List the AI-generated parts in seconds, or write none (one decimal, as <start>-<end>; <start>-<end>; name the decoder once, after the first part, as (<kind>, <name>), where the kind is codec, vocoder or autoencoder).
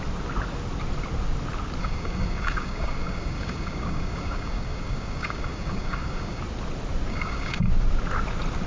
1.8-6.4 (codec, DAC); 7.1-7.7